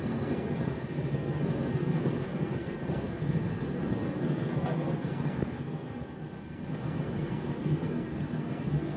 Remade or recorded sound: remade